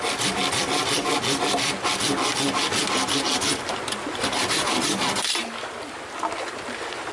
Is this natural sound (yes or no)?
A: yes